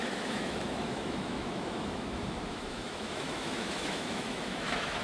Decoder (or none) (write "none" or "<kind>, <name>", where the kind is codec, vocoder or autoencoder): autoencoder, DAC-VAE